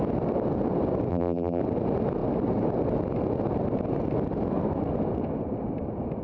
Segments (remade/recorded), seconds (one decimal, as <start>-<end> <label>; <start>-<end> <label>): 0.0-1.1 recorded; 1.1-1.6 remade; 1.6-6.2 recorded